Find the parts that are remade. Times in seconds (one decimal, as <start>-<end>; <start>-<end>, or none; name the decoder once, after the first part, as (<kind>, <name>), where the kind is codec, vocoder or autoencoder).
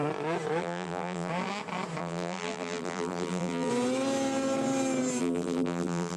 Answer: 0.6-1.3 (vocoder, BigVGAN v2); 2.0-3.7; 5.2-6.2